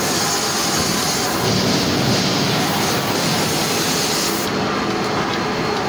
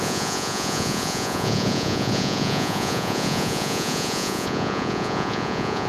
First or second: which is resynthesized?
second